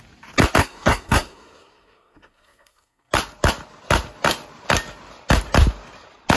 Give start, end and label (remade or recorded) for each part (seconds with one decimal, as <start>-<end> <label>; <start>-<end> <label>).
0.0-0.6 recorded; 0.6-3.1 remade; 3.1-6.4 recorded